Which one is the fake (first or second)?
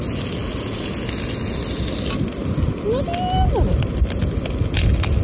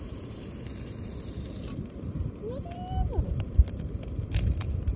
second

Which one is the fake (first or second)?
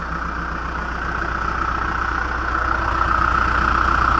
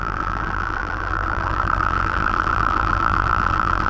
second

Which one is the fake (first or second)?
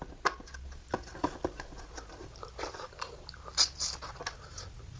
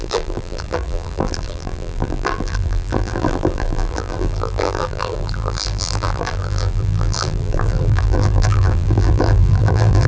second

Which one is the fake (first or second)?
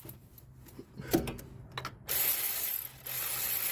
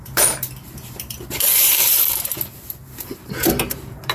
second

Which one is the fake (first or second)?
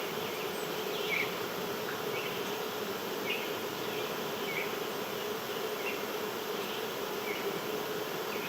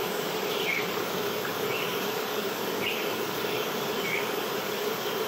second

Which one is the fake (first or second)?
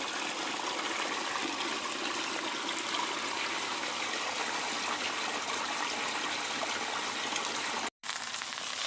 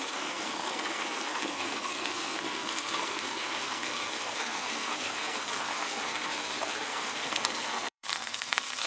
second